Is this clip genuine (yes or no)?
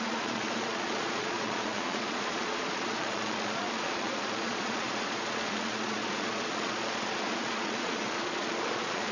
no